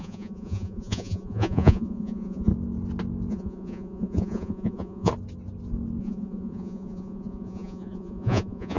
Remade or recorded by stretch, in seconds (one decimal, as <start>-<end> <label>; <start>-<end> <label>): 0.0-2.5 remade; 2.5-3.3 recorded; 3.3-5.1 remade; 5.1-6.0 recorded; 6.0-8.8 remade